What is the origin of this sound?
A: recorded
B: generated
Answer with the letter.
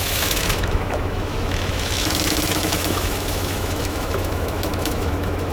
B